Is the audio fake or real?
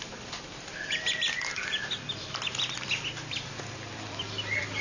fake